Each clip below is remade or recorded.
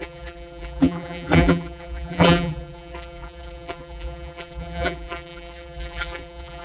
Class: remade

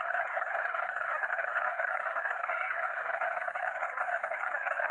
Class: remade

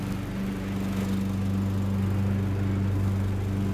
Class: recorded